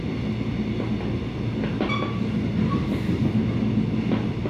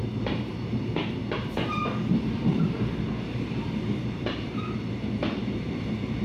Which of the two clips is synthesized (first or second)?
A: second